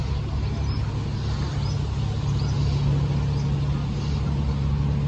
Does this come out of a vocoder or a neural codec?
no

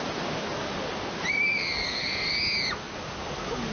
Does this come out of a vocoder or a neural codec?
no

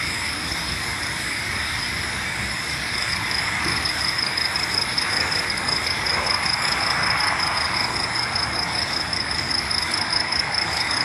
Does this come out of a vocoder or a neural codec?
yes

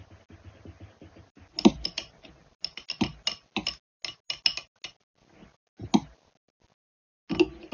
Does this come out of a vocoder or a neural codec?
no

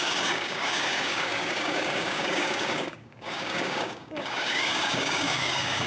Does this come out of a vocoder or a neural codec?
yes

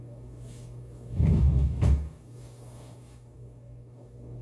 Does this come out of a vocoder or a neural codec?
yes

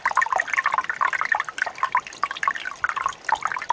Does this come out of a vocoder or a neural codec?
no